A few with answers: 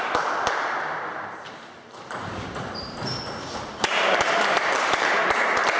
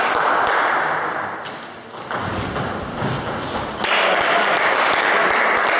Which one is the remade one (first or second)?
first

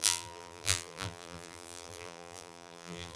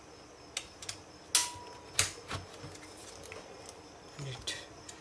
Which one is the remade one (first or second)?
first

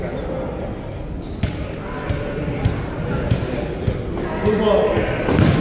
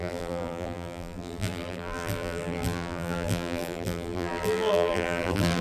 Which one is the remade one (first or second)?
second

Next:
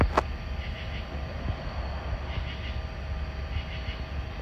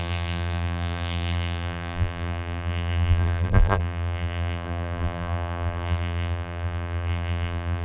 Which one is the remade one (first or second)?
second